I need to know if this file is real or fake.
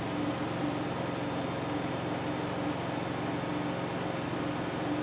real